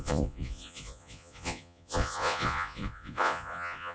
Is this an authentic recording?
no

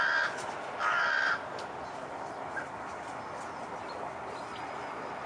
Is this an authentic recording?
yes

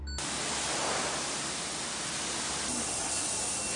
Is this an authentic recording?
yes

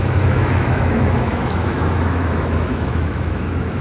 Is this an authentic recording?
no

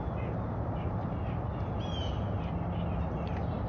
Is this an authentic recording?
yes